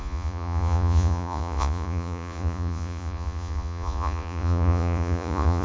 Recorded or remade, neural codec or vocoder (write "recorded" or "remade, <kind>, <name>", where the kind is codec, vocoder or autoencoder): remade, vocoder, Vocos